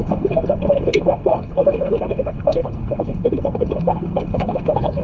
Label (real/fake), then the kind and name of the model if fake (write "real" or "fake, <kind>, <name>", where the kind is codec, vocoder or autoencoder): fake, codec, SNAC